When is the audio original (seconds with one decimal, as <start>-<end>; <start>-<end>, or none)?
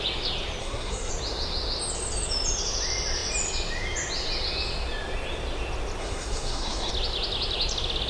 0.0-0.6; 1.1-6.0; 6.9-8.1